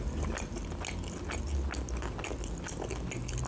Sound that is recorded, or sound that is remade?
recorded